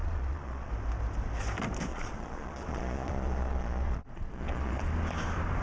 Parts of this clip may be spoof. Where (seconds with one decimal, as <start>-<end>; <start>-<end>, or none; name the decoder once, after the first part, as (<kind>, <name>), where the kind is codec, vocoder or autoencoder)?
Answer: 0.0-0.7 (vocoder, Vocos); 1.9-4.8